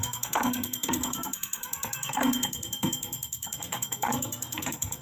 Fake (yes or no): yes